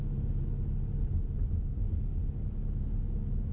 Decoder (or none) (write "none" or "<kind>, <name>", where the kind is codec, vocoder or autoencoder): none